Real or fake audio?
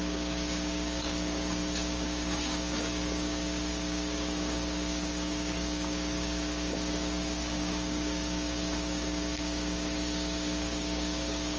fake